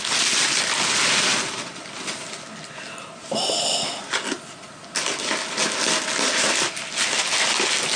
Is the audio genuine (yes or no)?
yes